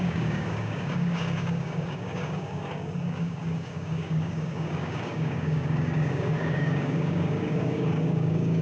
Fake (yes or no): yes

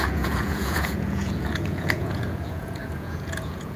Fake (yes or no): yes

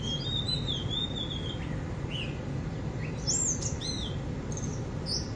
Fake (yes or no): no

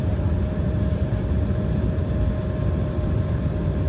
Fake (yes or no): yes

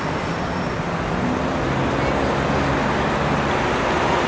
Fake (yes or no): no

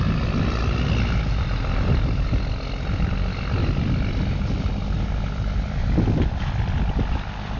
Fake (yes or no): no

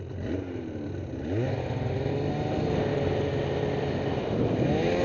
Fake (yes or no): no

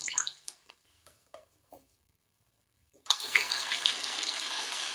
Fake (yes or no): yes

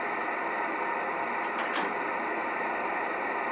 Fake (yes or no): no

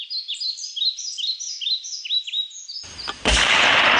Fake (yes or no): no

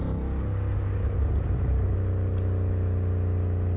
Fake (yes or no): no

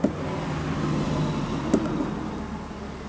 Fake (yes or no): no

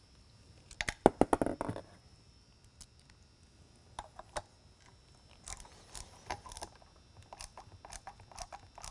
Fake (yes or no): no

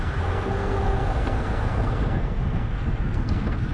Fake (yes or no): yes